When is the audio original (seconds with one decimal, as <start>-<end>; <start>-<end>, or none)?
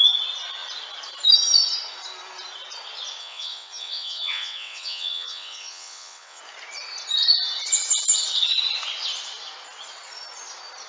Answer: 0.0-3.2; 6.4-10.9